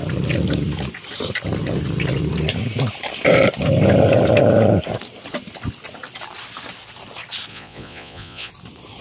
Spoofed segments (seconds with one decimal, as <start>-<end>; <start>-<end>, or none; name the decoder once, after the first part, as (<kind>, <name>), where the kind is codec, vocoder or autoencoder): 7.5-8.5 (vocoder, Vocos)